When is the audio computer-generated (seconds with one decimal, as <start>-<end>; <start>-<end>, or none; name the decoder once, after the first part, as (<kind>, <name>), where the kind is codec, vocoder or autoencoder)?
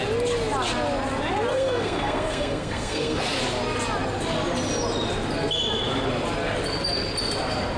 1.5-3.2 (codec, SNAC)